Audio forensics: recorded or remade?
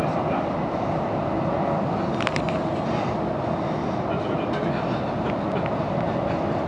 recorded